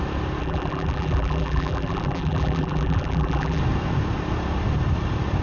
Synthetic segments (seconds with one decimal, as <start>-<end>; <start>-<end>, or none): 0.4-3.6